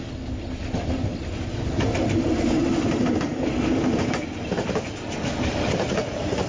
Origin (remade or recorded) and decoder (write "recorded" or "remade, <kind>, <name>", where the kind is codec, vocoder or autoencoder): recorded